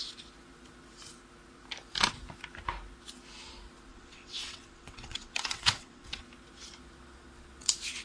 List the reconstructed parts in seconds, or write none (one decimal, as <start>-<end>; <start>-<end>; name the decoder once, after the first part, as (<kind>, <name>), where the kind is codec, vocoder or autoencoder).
3.9-6.2 (vocoder, WaveNeXt)